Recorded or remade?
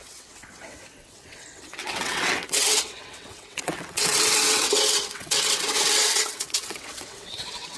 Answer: remade